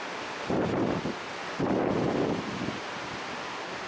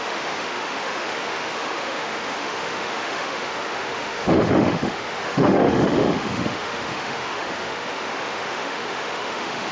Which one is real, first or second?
first